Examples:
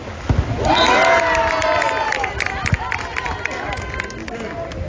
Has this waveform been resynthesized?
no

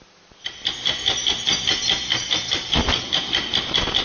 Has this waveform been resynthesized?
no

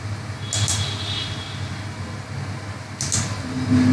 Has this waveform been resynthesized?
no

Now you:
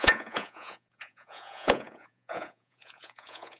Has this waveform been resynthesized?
yes